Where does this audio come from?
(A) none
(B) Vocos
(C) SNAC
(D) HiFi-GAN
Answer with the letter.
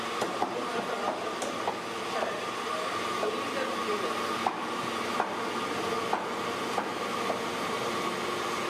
A